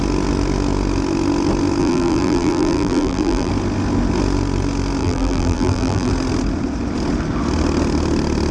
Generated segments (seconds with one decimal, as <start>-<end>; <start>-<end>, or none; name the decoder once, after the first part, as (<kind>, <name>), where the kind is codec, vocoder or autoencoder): 1.8-3.5 (vocoder, BigVGAN v2); 5.0-6.1